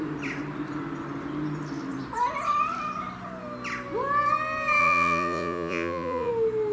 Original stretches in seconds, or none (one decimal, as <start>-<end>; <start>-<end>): 0.0-4.8; 6.3-6.7